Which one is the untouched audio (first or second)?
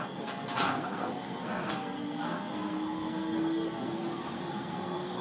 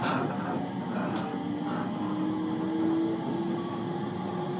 second